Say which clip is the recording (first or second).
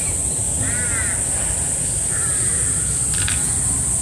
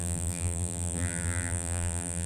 first